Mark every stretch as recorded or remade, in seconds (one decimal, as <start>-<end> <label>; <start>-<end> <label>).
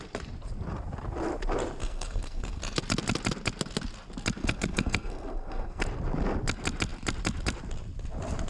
0.0-1.8 recorded; 1.8-2.6 remade; 2.6-4.4 recorded; 4.4-5.8 remade; 5.8-8.5 recorded